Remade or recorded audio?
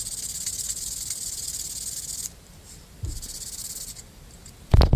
recorded